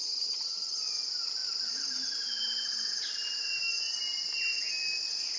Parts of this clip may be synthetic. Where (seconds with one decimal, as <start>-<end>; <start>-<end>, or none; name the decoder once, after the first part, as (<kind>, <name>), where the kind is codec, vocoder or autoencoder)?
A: 0.0-0.8 (vocoder, HiFi-GAN)